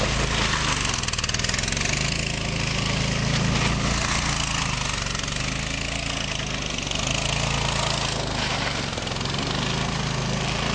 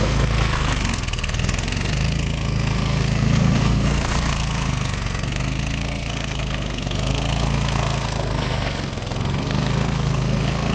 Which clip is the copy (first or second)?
second